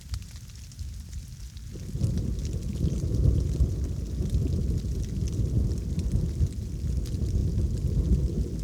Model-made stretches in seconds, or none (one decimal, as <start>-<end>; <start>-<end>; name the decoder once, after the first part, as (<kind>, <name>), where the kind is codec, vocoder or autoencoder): none